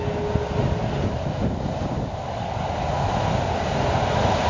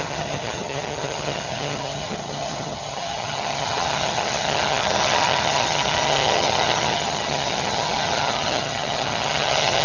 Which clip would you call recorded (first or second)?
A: first